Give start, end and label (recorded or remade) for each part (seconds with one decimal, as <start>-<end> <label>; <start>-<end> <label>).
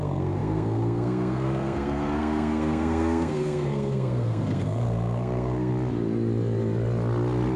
0.0-5.7 remade; 5.7-7.6 recorded